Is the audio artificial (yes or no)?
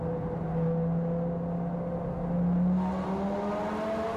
no